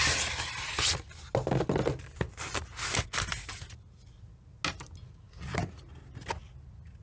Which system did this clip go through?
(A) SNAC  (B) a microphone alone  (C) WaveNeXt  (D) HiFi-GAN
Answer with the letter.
B